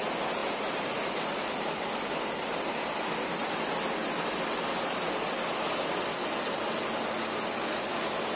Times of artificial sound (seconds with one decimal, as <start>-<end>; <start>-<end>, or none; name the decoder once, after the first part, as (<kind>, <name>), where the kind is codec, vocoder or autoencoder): none